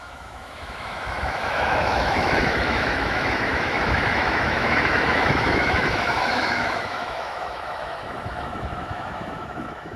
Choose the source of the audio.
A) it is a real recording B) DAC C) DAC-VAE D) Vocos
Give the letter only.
C